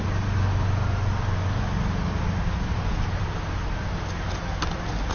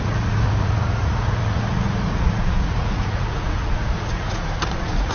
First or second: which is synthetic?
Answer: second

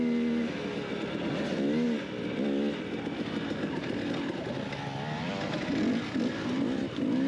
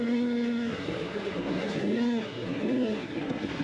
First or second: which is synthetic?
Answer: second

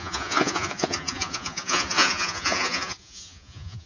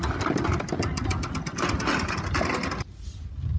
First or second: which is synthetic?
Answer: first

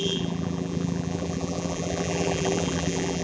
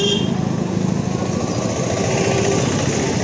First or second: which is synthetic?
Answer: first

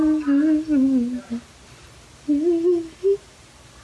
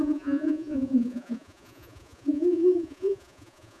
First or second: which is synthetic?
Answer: second